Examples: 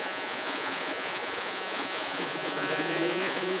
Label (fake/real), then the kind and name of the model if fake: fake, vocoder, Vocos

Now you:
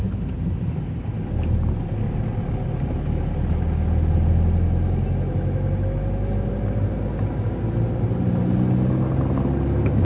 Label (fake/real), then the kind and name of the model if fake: real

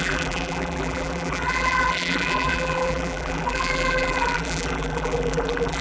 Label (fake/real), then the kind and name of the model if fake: fake, vocoder, BigVGAN v2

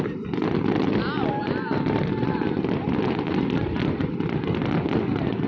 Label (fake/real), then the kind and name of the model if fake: real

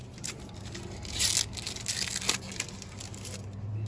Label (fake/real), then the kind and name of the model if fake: real